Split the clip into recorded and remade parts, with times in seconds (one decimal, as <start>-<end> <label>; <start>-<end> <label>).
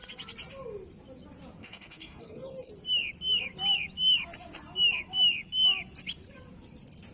0.0-1.6 recorded; 1.6-2.7 remade; 2.7-7.1 recorded